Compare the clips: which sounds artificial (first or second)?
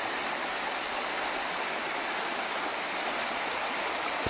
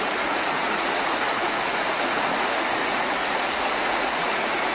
second